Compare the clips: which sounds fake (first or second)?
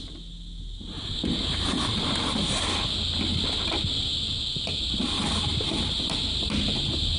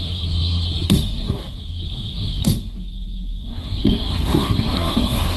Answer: second